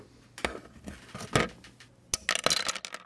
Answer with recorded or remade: recorded